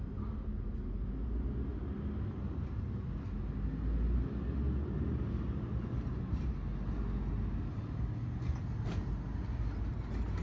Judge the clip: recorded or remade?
recorded